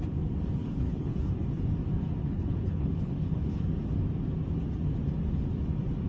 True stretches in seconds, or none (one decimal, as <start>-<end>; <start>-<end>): 0.0-0.6; 1.3-2.2; 3.6-6.1